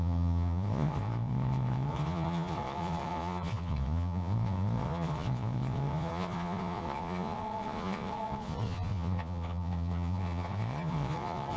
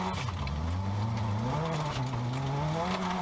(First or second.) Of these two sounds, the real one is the second